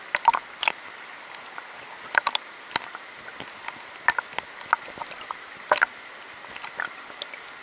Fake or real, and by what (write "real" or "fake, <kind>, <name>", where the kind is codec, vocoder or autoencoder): real